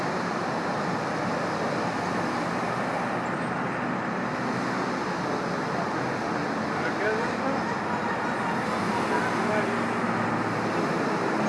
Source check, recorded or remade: recorded